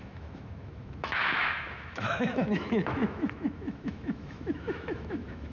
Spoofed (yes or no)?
yes